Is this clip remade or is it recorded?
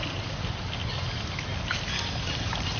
recorded